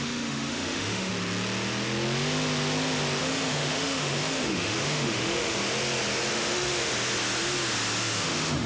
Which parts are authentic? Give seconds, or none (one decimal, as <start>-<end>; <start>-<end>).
1.1-3.2; 5.6-6.3; 6.9-8.0